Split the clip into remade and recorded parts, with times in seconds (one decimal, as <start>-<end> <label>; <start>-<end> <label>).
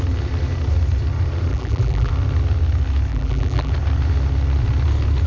0.0-1.5 recorded; 1.5-2.1 remade; 2.1-3.1 recorded; 3.1-3.7 remade; 3.7-5.3 recorded